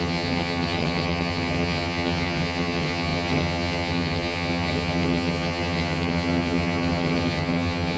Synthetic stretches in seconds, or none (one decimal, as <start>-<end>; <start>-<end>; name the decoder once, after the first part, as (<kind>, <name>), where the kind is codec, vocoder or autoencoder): 0.0-8.0 (vocoder, HiFi-GAN)